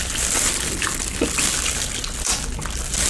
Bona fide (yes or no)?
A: yes